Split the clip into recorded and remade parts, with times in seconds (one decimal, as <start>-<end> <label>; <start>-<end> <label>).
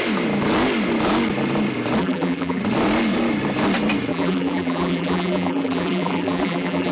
0.0-2.0 recorded; 2.0-2.6 remade; 2.6-4.1 recorded; 4.1-6.9 remade